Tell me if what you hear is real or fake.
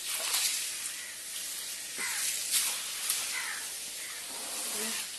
real